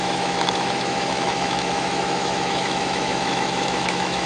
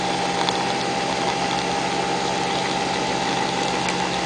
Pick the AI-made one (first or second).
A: first